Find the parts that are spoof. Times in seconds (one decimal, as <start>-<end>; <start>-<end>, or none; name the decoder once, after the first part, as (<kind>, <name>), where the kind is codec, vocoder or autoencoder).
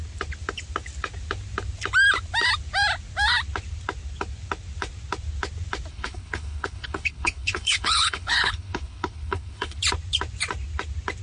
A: 5.9-9.8 (codec, HILCodec)